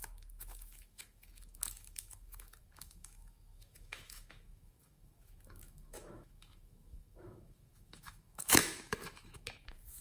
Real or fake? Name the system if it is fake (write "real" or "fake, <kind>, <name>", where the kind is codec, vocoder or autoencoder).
fake, autoencoder, DAC-VAE